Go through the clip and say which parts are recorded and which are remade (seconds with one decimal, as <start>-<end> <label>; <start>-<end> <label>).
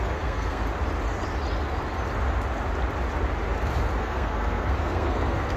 0.0-0.6 remade; 0.6-4.0 recorded; 4.0-5.6 remade